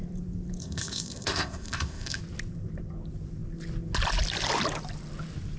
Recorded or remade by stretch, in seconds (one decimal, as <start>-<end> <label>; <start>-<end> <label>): 0.0-0.6 recorded; 0.6-2.2 remade; 2.2-5.6 recorded